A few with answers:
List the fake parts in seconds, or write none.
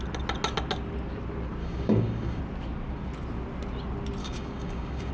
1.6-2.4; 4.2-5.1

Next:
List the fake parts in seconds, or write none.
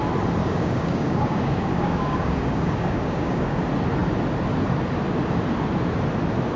0.4-3.6